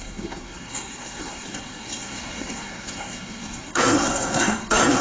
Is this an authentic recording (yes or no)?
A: no